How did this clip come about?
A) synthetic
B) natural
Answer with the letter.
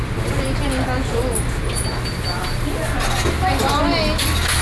B